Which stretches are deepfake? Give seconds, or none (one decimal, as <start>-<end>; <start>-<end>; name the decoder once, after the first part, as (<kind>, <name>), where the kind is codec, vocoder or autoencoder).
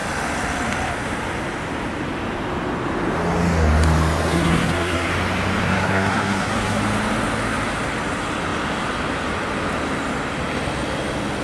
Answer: 4.2-5.1 (codec, SNAC); 5.6-6.8